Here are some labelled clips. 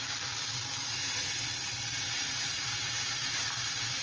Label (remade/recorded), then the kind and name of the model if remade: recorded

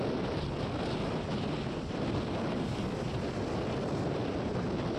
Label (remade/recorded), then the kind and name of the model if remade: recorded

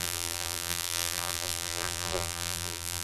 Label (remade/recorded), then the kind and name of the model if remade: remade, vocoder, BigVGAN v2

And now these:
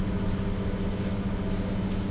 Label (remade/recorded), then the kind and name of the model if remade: recorded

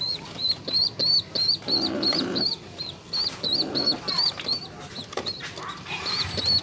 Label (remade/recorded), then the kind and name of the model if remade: recorded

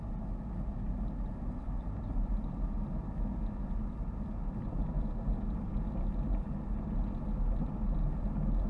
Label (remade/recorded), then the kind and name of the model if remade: recorded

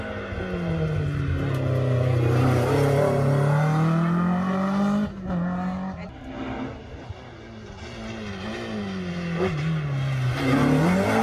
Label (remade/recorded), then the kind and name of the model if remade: recorded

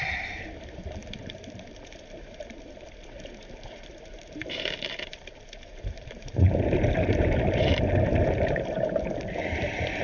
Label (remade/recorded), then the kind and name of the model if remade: remade, vocoder, BigVGAN v2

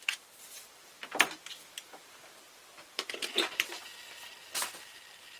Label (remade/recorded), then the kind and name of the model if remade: remade, vocoder, BigVGAN v2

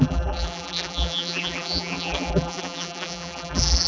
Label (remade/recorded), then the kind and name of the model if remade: remade, vocoder, BigVGAN v2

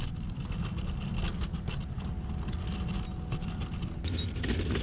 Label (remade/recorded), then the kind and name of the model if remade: recorded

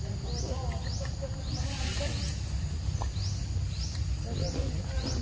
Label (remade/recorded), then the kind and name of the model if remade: recorded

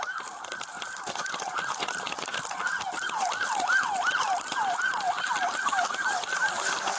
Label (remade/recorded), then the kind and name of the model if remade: recorded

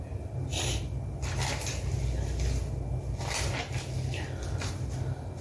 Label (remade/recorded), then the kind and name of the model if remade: recorded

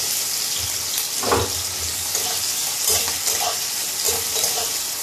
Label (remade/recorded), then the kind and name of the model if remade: recorded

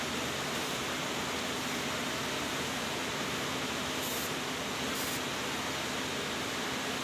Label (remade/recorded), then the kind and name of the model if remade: recorded